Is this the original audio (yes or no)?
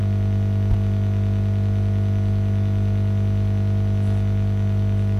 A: yes